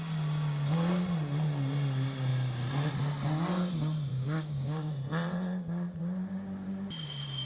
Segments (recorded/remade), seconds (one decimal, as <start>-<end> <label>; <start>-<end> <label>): 0.0-4.1 recorded; 4.1-4.9 remade; 4.9-7.5 recorded